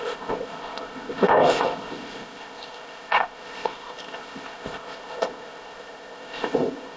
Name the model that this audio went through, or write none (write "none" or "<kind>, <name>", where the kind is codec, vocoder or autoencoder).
codec, ZipCodec